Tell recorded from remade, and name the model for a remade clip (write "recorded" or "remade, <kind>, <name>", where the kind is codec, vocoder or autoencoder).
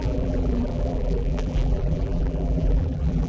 remade, vocoder, BigVGAN v2